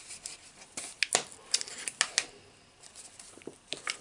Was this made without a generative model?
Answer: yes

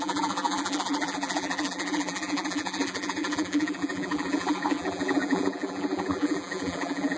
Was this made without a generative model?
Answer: no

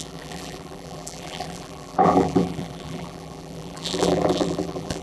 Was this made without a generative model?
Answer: no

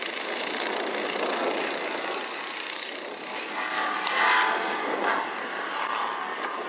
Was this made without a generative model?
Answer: yes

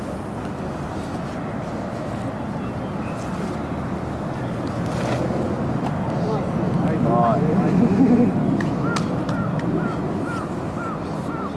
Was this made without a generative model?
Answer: yes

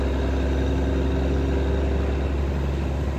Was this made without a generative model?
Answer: yes